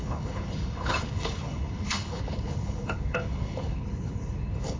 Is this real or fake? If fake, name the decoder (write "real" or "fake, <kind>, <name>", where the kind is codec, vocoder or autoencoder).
fake, codec, HILCodec